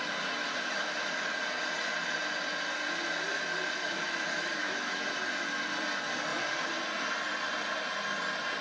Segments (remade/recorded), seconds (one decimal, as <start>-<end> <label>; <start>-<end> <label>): 0.0-0.5 recorded; 0.5-1.1 remade; 1.1-3.8 recorded; 3.8-5.1 remade; 5.1-8.6 recorded